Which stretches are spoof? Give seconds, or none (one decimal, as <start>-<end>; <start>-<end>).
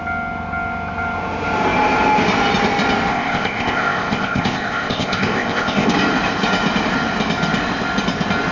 3.1-5.9